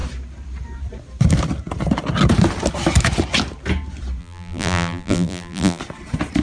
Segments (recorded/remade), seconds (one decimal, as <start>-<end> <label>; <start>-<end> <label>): 0.0-4.2 recorded; 4.2-5.8 remade; 5.8-6.4 recorded